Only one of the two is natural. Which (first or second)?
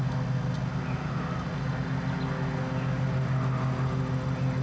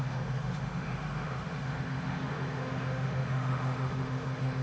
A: first